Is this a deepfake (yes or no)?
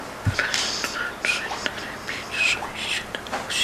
no